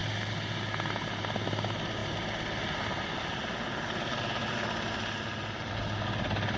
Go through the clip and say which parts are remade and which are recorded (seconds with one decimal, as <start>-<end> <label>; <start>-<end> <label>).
0.0-6.6 recorded